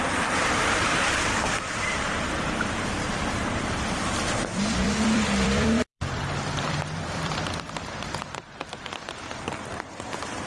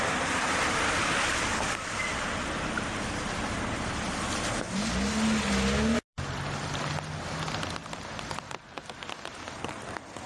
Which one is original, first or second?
second